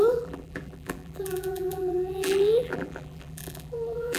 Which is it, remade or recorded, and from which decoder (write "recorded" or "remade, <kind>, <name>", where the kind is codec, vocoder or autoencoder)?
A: remade, vocoder, BigVGAN v2